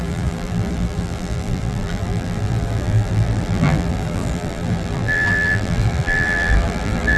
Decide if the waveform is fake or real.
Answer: fake